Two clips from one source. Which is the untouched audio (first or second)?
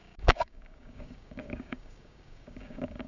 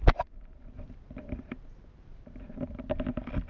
second